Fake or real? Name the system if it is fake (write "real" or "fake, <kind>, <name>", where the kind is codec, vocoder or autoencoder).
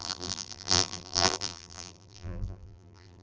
fake, vocoder, BigVGAN v2